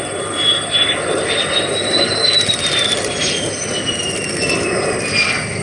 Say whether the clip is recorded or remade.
recorded